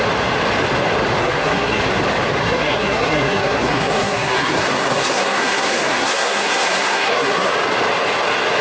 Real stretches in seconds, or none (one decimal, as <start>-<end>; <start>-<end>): 0.0-1.2; 1.8-2.4; 7.5-8.6